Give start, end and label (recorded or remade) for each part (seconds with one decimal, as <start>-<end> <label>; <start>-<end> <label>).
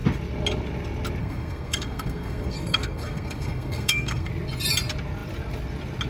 0.0-1.2 recorded; 1.2-4.3 remade; 4.3-6.1 recorded